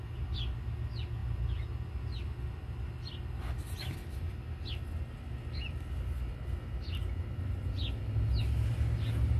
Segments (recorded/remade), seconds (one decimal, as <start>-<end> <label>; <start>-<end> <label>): 0.0-9.4 recorded